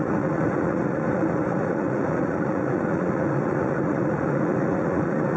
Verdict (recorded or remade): remade